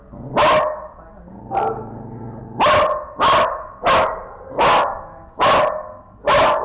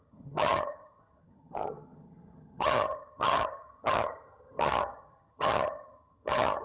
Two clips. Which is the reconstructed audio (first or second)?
second